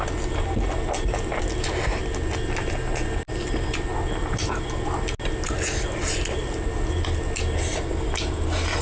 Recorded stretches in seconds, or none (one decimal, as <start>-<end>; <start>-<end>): 0.0-8.8